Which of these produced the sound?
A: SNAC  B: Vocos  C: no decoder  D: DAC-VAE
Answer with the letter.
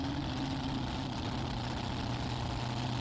C